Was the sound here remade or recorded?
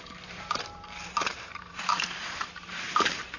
remade